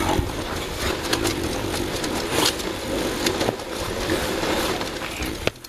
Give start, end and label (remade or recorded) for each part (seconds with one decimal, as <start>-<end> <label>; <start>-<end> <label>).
0.0-5.7 recorded

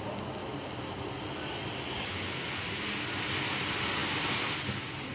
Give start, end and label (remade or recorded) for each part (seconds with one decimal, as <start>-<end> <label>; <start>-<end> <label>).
0.0-5.1 recorded

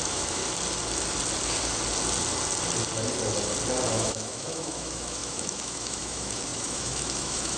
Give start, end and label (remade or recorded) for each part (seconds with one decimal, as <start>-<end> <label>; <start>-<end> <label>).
0.0-0.4 remade; 0.4-3.9 recorded; 3.9-7.6 remade

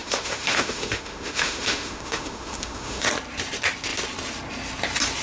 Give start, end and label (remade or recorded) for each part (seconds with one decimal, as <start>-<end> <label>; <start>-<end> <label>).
0.0-3.1 remade; 3.1-5.2 recorded

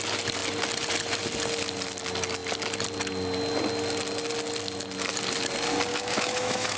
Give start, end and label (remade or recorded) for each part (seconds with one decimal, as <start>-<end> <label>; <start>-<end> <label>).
0.0-5.9 recorded; 5.9-6.8 remade

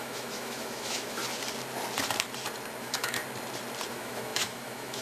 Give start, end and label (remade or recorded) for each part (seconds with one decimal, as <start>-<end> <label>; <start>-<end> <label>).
0.0-1.2 remade; 1.2-2.8 recorded; 2.8-3.2 remade; 3.2-3.9 recorded; 3.9-5.0 remade

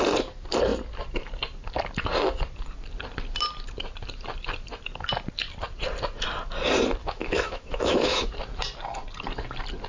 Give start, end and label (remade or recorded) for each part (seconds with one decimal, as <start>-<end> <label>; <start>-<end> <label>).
0.0-7.0 recorded; 7.0-8.3 remade; 8.3-9.9 recorded

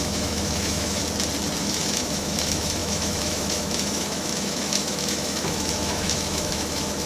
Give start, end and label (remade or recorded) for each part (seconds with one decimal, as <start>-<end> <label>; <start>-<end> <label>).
0.0-1.0 remade; 1.0-1.6 recorded; 1.6-7.1 remade